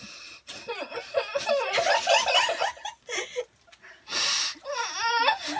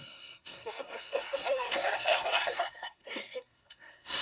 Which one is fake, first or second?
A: second